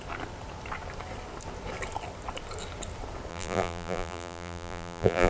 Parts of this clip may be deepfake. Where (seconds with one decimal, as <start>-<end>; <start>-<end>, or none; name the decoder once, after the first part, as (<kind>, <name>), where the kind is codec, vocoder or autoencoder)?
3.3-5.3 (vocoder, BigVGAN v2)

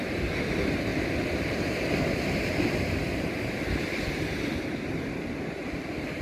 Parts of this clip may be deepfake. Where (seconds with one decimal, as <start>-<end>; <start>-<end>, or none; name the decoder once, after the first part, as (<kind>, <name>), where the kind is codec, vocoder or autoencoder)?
0.0-0.9 (vocoder, BigVGAN v2); 2.9-4.9; 5.6-6.2

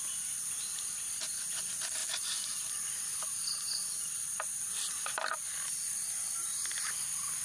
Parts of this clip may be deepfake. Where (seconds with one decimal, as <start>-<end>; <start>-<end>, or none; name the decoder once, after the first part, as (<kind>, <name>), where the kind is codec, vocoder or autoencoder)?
2.0-2.7 (vocoder, BigVGAN v2)